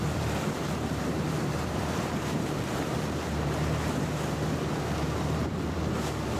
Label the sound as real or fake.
fake